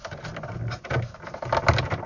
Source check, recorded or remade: recorded